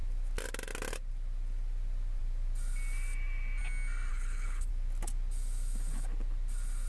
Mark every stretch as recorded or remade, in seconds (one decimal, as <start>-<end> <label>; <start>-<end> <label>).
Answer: 0.0-4.1 recorded; 4.1-4.7 remade; 4.7-6.9 recorded